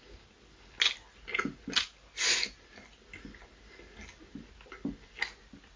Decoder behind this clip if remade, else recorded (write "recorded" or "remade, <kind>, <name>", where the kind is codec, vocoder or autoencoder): recorded